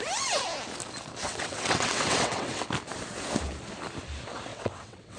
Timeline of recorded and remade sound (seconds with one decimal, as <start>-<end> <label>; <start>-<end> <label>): 0.0-1.2 recorded; 1.2-2.6 remade; 2.6-4.5 recorded; 4.5-5.2 remade